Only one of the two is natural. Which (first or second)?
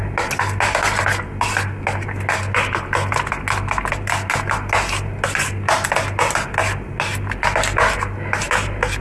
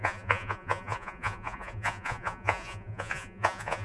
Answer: first